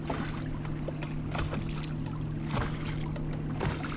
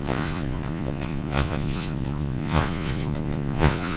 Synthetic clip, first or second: second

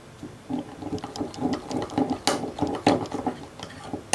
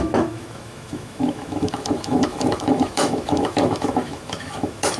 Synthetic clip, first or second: second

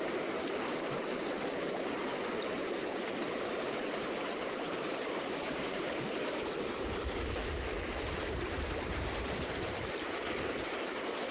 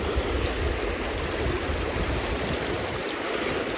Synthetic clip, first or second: first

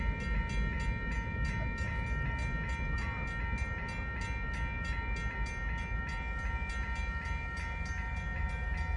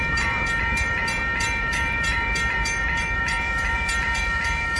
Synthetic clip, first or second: second